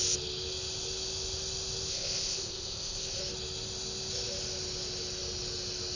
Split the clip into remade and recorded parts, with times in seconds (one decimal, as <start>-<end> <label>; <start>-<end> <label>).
0.0-1.9 recorded; 1.9-3.2 remade; 3.2-6.0 recorded